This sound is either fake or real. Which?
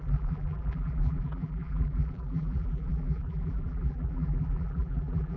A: fake